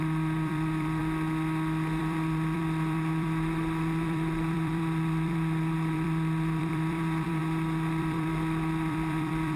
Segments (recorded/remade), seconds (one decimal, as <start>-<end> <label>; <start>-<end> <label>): 0.0-1.0 remade; 1.0-2.0 recorded; 2.0-7.4 remade; 7.4-8.0 recorded; 8.0-9.6 remade